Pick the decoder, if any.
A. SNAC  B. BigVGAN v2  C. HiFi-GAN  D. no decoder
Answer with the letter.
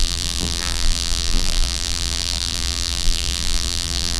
B